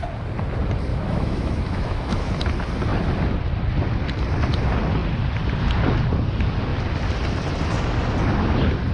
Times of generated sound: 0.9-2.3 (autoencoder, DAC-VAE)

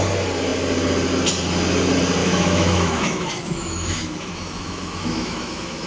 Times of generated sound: 2.2-5.9 (autoencoder, DAC-VAE)

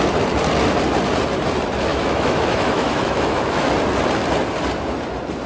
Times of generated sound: 1.9-3.7 (autoencoder, DAC-VAE)

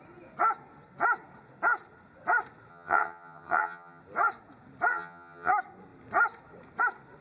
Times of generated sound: 2.7-4.0 (vocoder, HiFi-GAN); 4.9-5.5

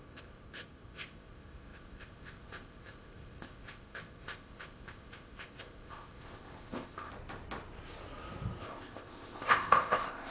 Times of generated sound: 0.0-7.1 (codec, ZipCodec); 8.6-10.3

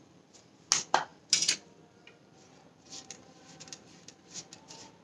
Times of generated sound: none

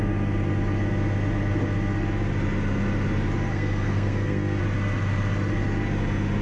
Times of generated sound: 3.5-4.6 (codec, SNAC)

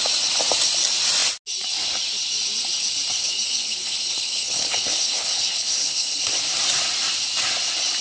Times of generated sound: 3.2-6.2 (codec, HILCodec)